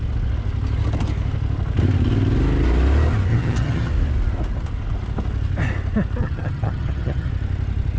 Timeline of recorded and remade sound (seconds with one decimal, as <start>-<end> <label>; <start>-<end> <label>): 0.0-3.3 recorded; 3.3-3.9 remade; 3.9-6.2 recorded; 6.2-7.3 remade; 7.3-8.0 recorded